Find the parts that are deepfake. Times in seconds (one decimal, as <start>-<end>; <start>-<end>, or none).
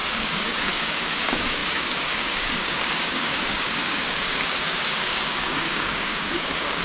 0.0-6.8